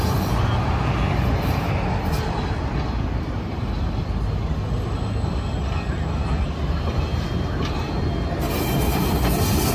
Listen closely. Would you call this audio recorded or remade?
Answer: recorded